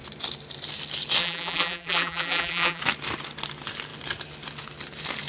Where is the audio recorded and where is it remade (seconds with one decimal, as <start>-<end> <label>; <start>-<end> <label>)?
0.0-1.2 recorded; 1.2-2.8 remade; 2.8-5.3 recorded